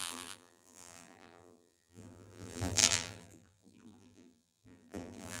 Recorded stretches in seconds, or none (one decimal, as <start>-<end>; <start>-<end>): none